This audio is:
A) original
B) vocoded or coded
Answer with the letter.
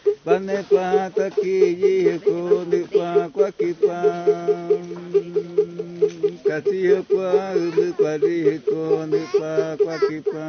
A